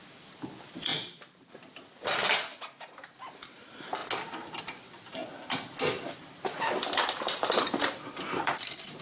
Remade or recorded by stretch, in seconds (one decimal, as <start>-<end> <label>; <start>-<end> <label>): 0.0-0.9 remade; 0.9-1.5 recorded; 1.5-4.0 remade; 4.0-4.6 recorded; 4.6-5.2 remade; 5.2-6.0 recorded; 6.0-9.0 remade